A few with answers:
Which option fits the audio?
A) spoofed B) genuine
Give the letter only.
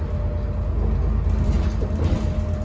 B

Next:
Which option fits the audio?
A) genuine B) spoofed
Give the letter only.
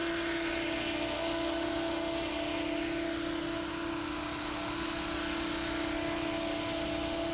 A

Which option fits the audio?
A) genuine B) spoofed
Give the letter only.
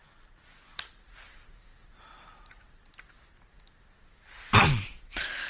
A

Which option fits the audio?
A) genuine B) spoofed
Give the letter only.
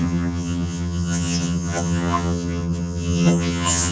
B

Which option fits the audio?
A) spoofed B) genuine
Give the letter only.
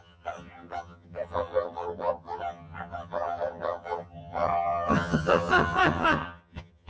A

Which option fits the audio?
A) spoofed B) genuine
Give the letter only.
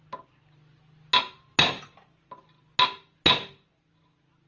B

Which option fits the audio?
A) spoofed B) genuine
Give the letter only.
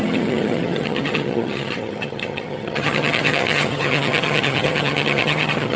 A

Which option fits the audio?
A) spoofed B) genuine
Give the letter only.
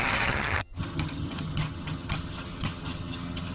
A